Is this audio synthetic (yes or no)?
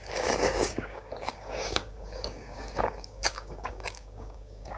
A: yes